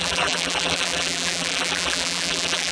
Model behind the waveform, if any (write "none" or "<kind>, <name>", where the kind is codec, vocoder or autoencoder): vocoder, BigVGAN v2